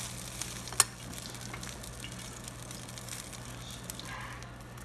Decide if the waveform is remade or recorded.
recorded